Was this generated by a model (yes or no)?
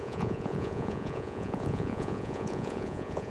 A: yes